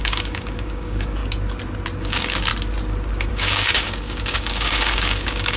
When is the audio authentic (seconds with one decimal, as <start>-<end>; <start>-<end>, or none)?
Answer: 1.2-2.0; 2.5-3.3